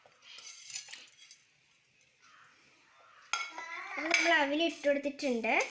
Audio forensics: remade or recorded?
recorded